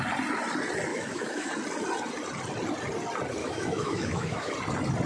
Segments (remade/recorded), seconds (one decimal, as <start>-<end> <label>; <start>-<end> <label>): 0.0-0.9 recorded; 0.9-1.5 remade; 1.5-3.4 recorded; 3.4-4.5 remade; 4.5-5.1 recorded